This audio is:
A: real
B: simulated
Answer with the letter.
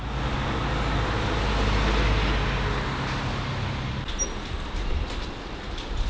A